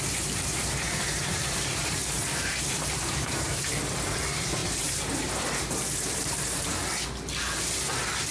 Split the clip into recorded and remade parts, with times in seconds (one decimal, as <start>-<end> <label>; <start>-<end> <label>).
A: 0.0-6.8 remade; 6.8-7.6 recorded; 7.6-8.3 remade